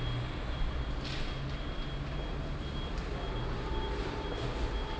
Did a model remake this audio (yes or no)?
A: no